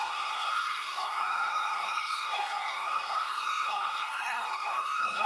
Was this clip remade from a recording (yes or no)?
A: yes